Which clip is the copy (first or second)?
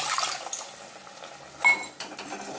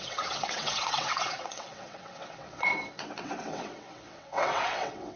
second